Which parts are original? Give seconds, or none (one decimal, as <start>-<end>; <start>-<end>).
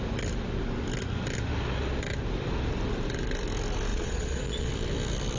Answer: 0.0-3.9; 4.7-5.4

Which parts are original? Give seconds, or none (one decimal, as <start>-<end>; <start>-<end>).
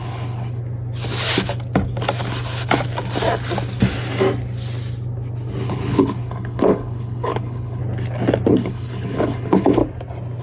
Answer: 0.6-5.6; 7.8-8.5; 9.8-10.4